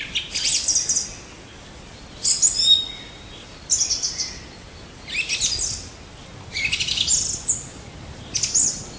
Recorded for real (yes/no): yes